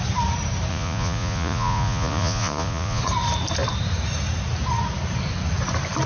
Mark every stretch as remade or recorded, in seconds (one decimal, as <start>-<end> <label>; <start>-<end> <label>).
0.0-0.7 recorded; 0.7-3.0 remade; 3.0-6.1 recorded